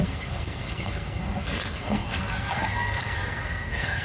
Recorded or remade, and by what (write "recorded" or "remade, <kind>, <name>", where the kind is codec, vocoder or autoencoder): remade, codec, SNAC